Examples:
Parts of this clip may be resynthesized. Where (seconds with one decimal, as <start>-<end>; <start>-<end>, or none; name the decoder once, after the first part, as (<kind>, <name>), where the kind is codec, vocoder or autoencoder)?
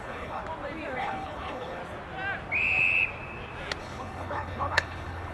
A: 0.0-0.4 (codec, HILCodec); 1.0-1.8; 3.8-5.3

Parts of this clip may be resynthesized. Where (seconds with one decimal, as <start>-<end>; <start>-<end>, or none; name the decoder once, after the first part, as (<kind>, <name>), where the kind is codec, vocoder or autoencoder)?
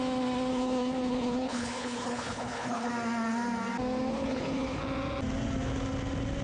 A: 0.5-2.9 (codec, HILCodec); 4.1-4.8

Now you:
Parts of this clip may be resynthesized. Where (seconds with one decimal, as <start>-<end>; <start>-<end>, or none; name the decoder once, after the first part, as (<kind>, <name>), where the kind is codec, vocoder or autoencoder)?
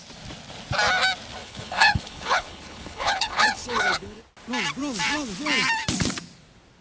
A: 1.4-4.2 (codec, HILCodec)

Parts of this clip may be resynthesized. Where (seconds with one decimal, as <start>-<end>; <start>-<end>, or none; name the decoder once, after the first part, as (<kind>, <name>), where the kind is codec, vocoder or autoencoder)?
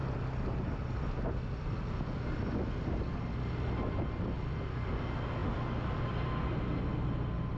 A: none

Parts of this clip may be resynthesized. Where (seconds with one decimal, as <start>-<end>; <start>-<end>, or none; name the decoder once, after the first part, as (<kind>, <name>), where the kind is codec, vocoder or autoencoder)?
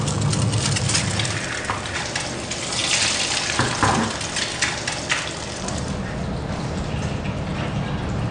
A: none